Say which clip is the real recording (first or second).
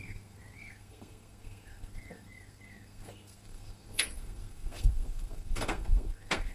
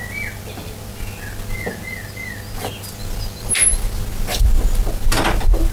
second